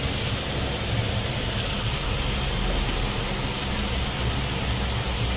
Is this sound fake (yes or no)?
no